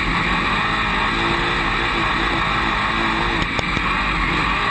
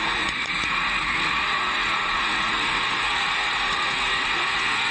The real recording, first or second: first